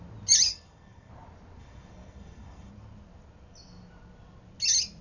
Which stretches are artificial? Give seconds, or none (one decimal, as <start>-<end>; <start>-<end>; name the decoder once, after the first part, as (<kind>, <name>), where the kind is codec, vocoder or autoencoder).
0.5-1.1 (codec, SNAC); 1.6-2.7